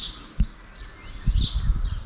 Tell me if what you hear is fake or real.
real